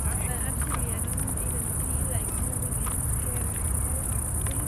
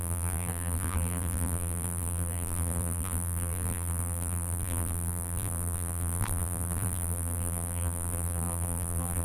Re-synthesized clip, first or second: second